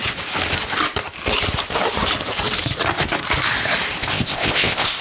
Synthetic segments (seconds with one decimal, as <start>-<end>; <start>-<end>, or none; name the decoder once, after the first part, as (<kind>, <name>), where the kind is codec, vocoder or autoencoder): 4.0-5.0 (codec, ZipCodec)